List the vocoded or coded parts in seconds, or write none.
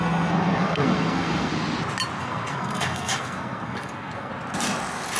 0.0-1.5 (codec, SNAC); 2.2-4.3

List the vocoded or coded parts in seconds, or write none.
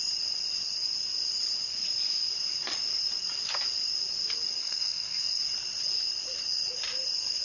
4.6-5.4 (codec, SNAC)